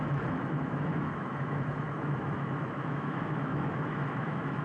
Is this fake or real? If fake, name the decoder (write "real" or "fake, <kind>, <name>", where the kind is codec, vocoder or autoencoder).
fake, autoencoder, DAC-VAE